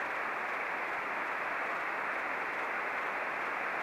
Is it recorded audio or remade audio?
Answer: recorded